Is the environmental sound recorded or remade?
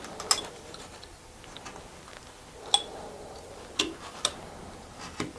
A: recorded